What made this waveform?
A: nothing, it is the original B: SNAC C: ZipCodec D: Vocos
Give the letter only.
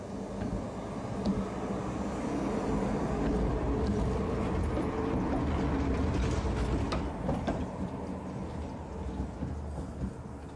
A